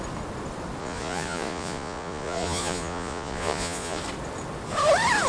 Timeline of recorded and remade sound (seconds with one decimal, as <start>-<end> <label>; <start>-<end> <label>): 0.0-0.8 recorded; 0.8-4.0 remade; 4.0-5.3 recorded